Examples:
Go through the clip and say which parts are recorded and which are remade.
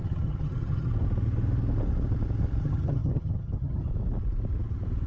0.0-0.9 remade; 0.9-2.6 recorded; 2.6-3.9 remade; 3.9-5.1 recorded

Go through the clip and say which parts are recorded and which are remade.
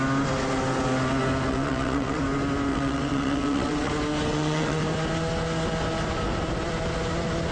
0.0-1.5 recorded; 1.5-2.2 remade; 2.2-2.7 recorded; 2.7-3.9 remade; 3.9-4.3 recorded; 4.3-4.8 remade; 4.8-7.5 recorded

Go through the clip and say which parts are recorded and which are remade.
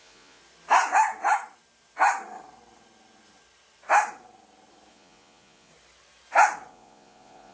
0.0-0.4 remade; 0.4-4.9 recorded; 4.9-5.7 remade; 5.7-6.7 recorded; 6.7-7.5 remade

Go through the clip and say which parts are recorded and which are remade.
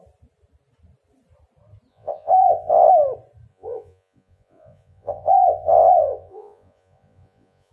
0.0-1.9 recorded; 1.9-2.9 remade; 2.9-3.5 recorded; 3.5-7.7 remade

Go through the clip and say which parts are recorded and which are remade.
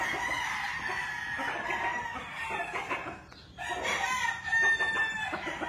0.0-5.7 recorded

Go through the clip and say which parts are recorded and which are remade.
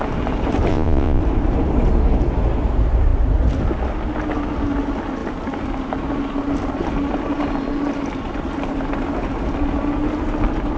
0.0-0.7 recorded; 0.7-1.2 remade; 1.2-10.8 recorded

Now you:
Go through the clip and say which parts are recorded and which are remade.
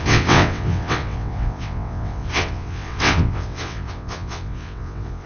0.0-5.3 remade